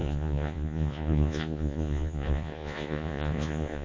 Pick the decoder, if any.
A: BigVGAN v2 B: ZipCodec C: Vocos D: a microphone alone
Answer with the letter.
C